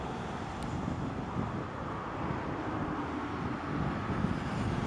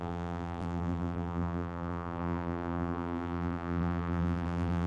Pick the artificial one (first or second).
second